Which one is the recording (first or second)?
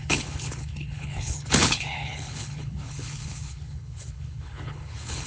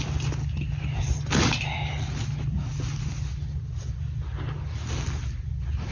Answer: second